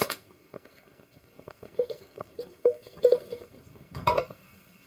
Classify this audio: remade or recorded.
remade